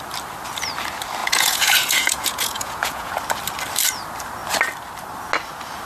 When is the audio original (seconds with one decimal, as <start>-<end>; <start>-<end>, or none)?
0.0-1.2; 3.1-5.8